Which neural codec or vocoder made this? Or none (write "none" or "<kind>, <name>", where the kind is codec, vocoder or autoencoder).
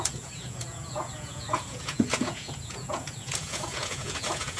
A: vocoder, Vocos